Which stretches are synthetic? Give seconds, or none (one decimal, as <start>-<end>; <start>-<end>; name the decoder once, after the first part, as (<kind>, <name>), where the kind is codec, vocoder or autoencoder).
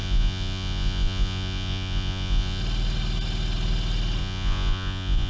0.0-2.6 (vocoder, Vocos); 4.2-5.3